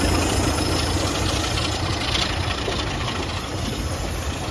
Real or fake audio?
real